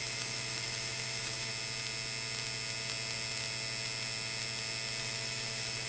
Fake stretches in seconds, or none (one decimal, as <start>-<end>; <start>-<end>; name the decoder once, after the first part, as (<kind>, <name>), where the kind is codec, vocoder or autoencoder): 0.0-1.5 (autoencoder, DAC-VAE); 5.0-5.9